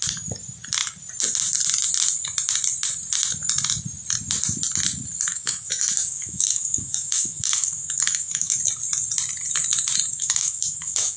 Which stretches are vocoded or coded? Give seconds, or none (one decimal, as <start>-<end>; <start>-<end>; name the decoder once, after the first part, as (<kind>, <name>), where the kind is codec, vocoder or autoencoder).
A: 5.3-8.6 (autoencoder, DAC-VAE); 10.1-11.2